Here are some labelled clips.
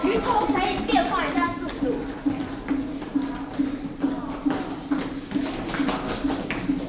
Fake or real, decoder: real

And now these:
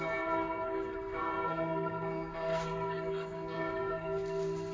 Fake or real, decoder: fake, codec, SNAC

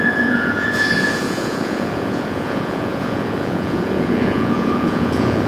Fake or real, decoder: fake, vocoder, Vocos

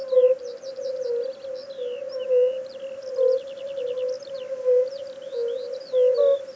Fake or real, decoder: real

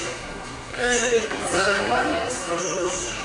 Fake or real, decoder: fake, codec, SNAC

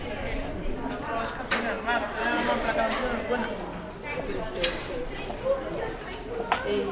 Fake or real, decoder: real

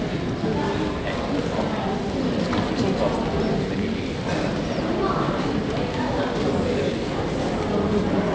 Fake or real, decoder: real